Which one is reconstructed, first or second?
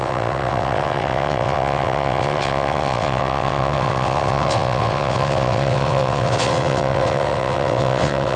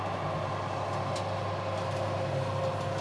first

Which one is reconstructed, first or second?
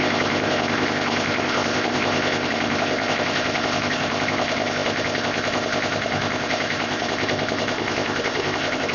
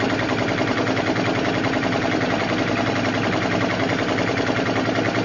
first